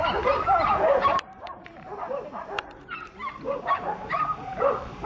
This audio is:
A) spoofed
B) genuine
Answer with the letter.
A